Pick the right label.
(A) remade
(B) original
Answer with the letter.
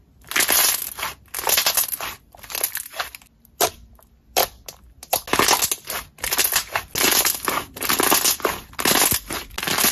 B